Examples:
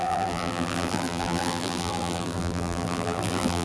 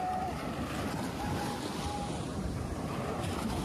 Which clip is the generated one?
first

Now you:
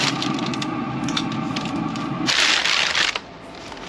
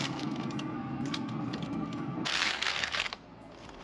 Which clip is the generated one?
second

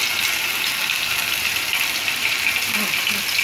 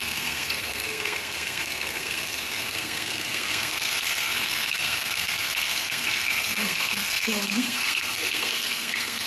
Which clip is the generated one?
second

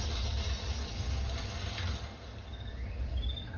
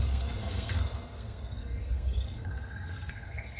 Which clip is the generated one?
second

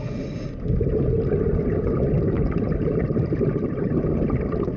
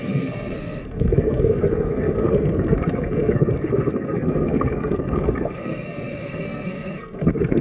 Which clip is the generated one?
second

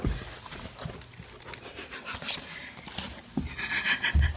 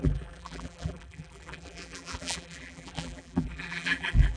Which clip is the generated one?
second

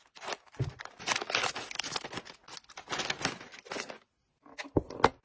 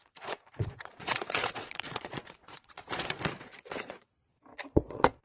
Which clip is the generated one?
second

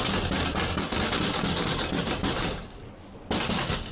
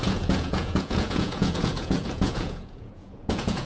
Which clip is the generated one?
second